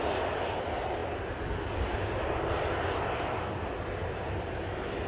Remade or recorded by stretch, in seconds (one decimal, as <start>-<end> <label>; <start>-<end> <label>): 0.0-5.1 recorded